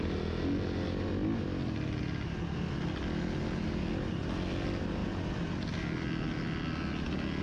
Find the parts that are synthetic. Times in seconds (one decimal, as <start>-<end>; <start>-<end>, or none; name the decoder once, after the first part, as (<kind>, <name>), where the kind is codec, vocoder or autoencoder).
none